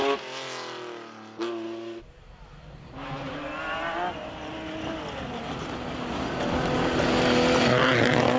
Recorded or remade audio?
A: recorded